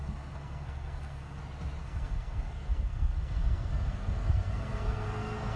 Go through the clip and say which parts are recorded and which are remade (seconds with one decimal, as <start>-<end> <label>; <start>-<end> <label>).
0.0-1.4 remade; 1.4-1.8 recorded; 1.8-5.6 remade

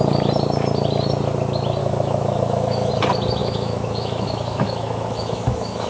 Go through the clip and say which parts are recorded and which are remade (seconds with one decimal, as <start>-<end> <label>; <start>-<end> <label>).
0.0-1.8 recorded; 1.8-2.9 remade; 2.9-3.4 recorded; 3.4-5.9 remade

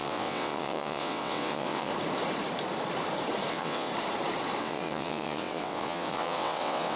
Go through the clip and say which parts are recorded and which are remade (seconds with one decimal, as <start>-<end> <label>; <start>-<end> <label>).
0.0-1.9 remade; 1.9-3.5 recorded; 3.5-3.9 remade; 3.9-4.6 recorded; 4.6-7.0 remade

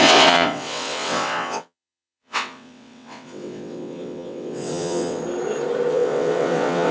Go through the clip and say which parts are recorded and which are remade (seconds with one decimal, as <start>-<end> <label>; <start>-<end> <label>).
0.0-5.2 remade; 5.2-5.9 recorded; 5.9-6.9 remade

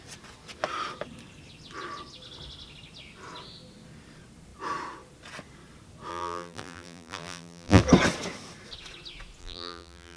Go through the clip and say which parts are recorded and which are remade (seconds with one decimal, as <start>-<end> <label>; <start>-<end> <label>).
0.0-6.1 recorded; 6.1-7.8 remade; 7.8-9.4 recorded; 9.4-10.2 remade

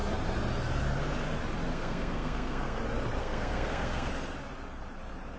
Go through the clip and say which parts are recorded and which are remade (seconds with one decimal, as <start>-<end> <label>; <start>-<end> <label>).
0.0-1.7 recorded; 1.7-2.8 remade; 2.8-3.2 recorded; 3.2-4.1 remade; 4.1-5.4 recorded